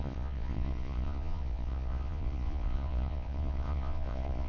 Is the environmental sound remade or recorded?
remade